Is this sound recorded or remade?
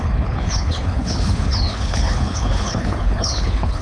remade